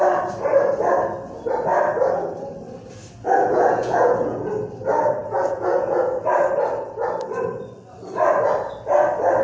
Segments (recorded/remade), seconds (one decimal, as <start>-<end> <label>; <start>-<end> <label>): 0.0-3.4 recorded; 3.4-4.5 remade; 4.5-5.2 recorded; 5.2-6.2 remade; 6.2-9.4 recorded